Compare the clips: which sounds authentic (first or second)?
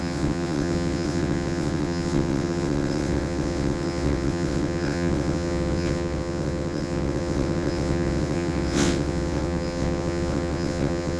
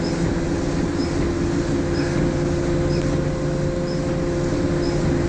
second